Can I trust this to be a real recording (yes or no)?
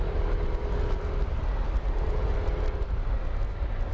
yes